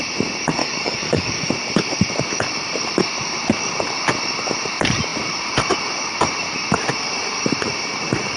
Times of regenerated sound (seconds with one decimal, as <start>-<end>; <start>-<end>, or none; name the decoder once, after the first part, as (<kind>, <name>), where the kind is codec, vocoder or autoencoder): 0.6-1.5 (codec, DAC)